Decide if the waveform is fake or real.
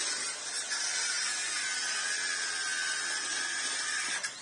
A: real